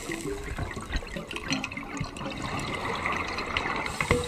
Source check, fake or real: real